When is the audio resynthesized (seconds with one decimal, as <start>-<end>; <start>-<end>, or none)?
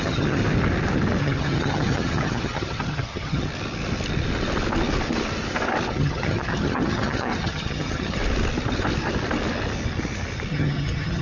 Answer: 0.0-0.4; 1.2-3.5; 5.9-8.2; 10.5-11.2